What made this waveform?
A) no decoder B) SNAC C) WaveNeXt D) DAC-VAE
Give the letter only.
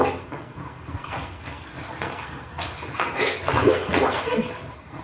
B